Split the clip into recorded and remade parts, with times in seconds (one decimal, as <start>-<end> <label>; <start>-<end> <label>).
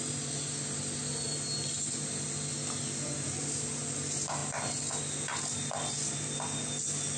0.0-7.2 recorded